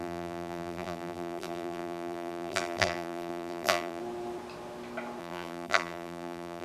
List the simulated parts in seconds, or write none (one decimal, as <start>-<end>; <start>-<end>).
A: 0.0-4.0; 5.2-6.6